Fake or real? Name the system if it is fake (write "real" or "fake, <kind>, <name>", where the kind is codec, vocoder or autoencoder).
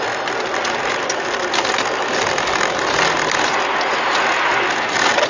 real